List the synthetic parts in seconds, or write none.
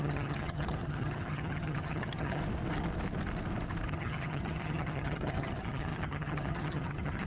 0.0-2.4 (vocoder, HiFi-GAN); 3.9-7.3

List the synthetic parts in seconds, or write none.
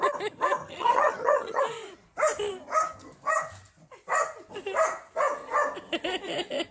0.6-1.6 (vocoder, HiFi-GAN)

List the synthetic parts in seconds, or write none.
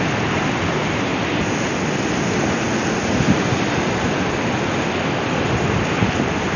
none